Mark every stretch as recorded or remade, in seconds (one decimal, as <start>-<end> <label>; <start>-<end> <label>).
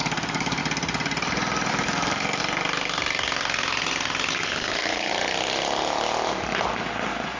0.0-0.6 remade; 0.6-1.7 recorded; 1.7-2.4 remade; 2.4-4.3 recorded; 4.3-5.1 remade; 5.1-7.4 recorded